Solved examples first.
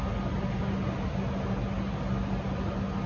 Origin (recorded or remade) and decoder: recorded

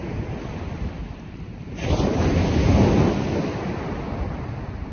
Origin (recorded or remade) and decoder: recorded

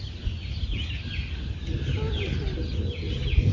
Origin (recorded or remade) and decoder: recorded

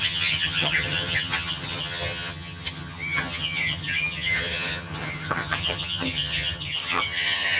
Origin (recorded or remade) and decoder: remade, vocoder, HiFi-GAN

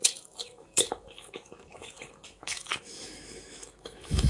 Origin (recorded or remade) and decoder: remade, autoencoder, DAC-VAE